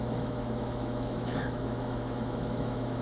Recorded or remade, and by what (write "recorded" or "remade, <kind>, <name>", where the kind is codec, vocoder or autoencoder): remade, autoencoder, DAC-VAE